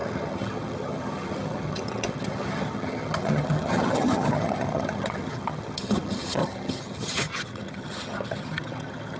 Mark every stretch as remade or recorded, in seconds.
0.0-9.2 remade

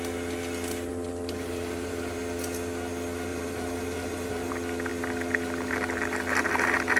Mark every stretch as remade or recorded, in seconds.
0.0-0.9 recorded; 0.9-2.2 remade; 2.2-3.3 recorded; 3.3-4.5 remade; 4.5-7.0 recorded

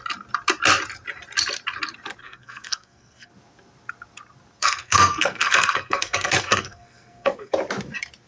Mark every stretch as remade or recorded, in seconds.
0.0-2.2 recorded; 2.2-3.3 remade; 3.3-4.6 recorded; 4.6-7.5 remade; 7.5-8.3 recorded

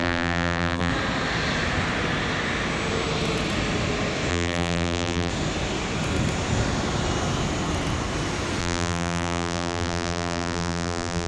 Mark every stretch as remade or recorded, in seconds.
0.0-0.9 remade; 0.9-4.3 recorded; 4.3-5.3 remade; 5.3-8.6 recorded; 8.6-11.3 remade

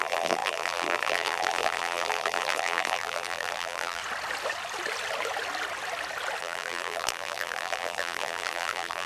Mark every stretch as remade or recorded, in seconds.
0.0-4.0 remade; 4.0-6.4 recorded; 6.4-9.1 remade